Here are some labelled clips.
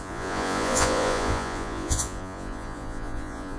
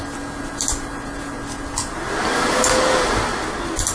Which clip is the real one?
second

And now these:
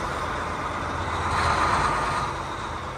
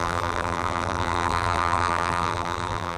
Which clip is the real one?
first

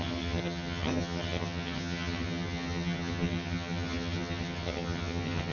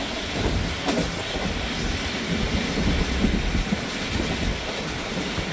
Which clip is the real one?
second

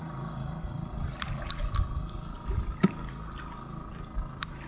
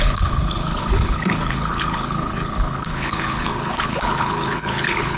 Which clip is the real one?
first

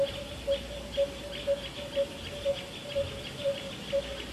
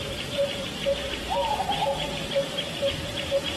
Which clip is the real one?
first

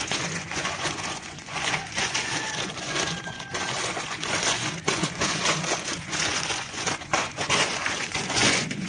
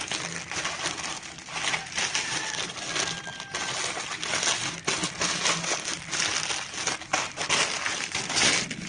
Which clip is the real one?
second